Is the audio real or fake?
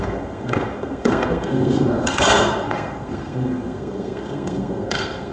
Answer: fake